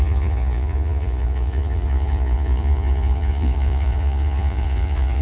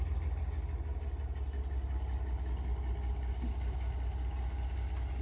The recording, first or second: second